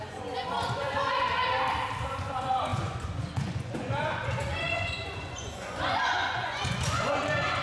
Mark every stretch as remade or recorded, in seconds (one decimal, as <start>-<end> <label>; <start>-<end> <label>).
0.0-1.3 remade; 1.3-2.2 recorded; 2.2-7.6 remade